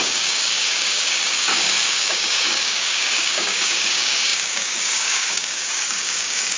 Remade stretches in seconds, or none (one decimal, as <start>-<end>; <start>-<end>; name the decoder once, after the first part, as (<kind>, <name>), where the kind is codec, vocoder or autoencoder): 0.0-6.6 (codec, DAC)